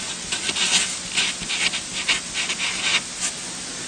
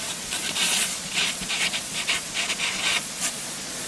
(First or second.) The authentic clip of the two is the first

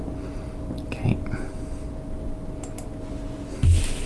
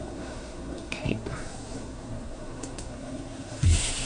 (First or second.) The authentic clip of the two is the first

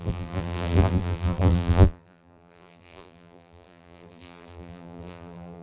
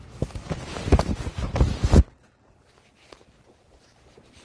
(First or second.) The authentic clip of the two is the second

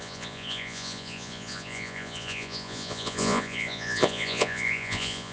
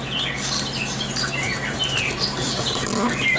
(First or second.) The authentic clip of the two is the second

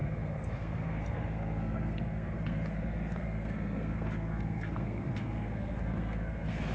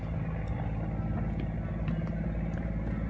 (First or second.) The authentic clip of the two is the second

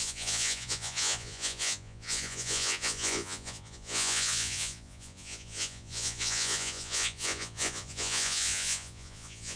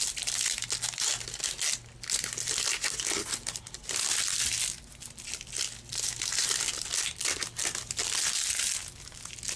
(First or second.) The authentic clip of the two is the second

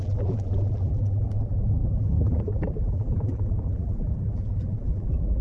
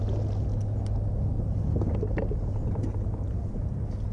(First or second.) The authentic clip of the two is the second